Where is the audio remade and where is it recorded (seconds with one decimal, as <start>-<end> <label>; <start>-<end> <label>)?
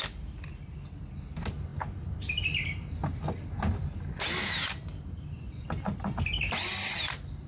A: 0.0-7.5 recorded